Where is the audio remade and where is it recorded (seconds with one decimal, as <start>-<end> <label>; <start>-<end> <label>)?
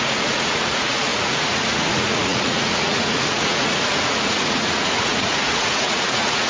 0.0-6.5 remade